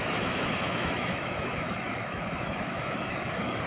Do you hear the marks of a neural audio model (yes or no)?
yes